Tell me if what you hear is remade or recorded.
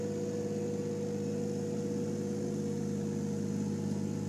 recorded